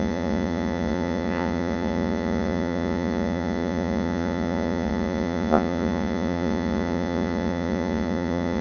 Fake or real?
fake